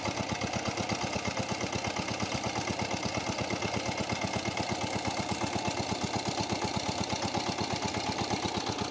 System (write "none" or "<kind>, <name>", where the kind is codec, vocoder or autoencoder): none